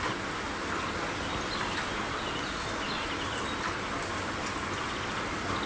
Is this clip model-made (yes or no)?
no